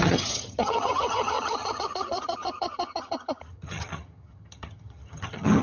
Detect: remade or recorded remade